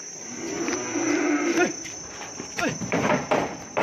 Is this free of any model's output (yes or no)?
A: yes